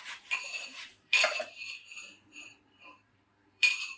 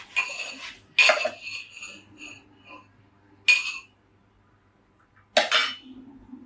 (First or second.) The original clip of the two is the second